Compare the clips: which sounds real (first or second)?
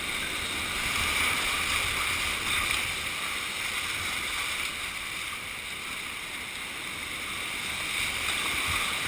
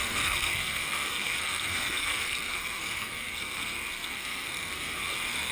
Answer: first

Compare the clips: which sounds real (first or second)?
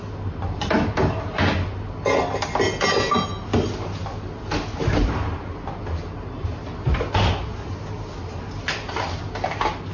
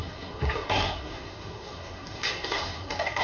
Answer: first